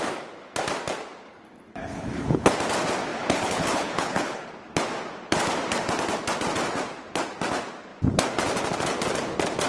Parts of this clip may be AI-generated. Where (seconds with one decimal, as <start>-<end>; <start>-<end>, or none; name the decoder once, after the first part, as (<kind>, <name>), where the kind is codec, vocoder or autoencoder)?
1.7-2.5 (codec, HILCodec); 3.1-4.5